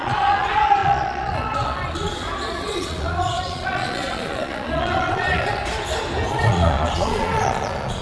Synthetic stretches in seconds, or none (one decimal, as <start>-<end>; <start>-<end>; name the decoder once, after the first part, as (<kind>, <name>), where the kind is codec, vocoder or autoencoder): 0.0-5.6 (vocoder, Vocos); 6.3-8.0